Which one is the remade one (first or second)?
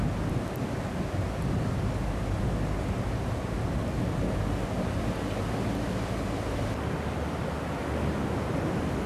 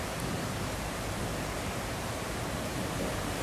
second